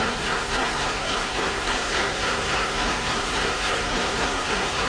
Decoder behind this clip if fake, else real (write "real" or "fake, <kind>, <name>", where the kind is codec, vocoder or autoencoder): fake, codec, SNAC